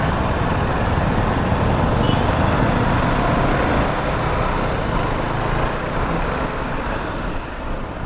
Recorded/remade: recorded